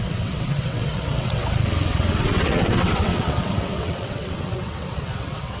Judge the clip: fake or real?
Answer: fake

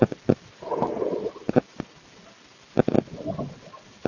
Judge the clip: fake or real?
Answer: real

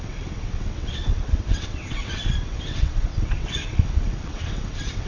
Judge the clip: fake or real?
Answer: fake